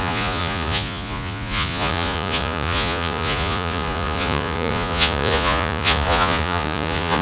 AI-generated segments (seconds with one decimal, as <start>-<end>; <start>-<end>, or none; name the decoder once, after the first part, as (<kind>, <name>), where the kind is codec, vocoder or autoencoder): 0.0-7.2 (vocoder, Vocos)